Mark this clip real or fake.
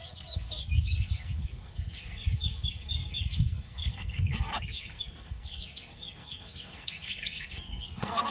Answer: fake